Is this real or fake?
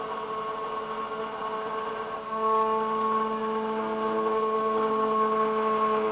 real